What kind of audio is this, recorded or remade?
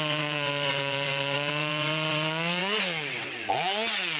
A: remade